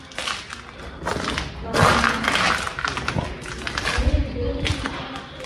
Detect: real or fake real